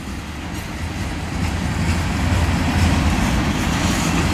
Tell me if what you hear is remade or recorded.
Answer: recorded